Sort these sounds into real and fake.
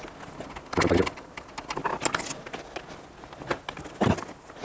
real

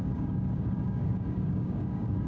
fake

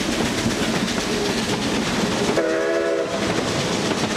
real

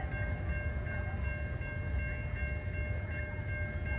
real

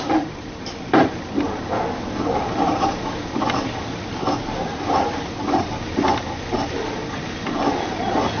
real